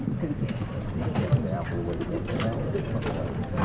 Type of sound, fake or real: fake